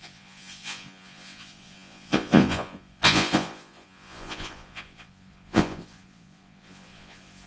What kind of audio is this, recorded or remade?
remade